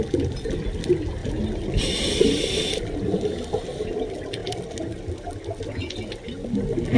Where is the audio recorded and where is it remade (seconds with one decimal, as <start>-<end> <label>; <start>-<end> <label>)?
0.0-7.0 recorded